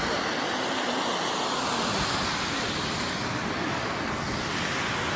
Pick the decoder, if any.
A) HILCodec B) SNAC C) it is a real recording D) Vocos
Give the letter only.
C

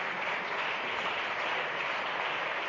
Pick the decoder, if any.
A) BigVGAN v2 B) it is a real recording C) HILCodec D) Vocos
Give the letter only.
A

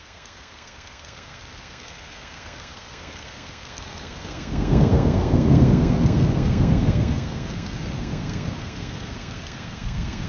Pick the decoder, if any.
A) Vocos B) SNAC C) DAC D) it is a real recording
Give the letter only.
B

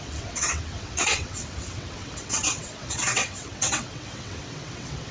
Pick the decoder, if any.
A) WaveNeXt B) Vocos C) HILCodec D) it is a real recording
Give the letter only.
A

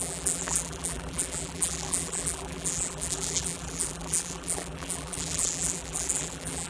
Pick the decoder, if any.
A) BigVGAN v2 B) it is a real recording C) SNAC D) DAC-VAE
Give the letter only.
A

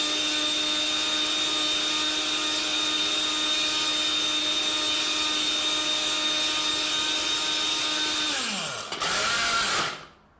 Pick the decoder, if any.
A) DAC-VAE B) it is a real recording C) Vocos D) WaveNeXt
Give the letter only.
B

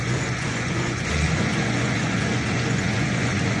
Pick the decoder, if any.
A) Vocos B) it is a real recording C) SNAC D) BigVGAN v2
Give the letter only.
A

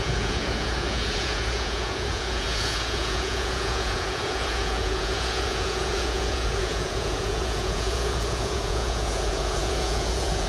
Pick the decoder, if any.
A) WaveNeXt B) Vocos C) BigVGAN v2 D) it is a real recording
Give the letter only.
B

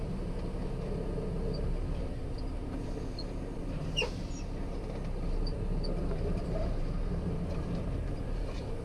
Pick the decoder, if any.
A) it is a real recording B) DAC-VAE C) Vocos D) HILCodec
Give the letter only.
A